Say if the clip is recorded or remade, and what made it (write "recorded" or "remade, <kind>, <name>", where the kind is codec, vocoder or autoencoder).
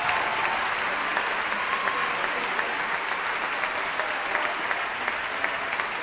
recorded